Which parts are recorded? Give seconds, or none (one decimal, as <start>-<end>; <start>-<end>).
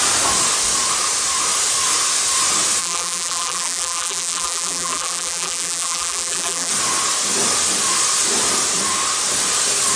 0.0-2.8; 6.7-10.0